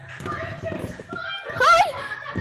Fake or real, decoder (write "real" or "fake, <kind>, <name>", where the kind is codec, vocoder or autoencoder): fake, vocoder, BigVGAN v2